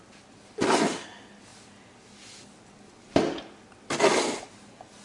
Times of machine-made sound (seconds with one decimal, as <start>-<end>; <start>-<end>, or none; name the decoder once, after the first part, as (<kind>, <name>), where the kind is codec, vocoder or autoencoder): none